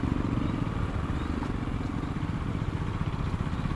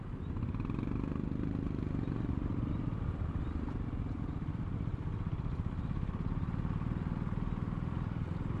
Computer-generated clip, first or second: second